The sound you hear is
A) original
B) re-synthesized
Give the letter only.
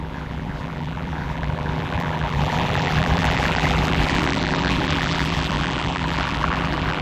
B